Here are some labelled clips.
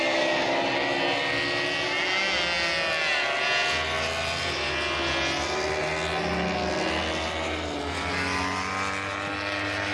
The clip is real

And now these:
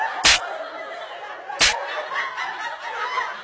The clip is real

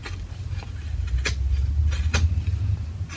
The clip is real